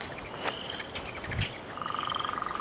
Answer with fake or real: real